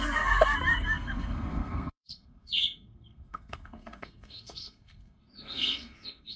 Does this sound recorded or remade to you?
remade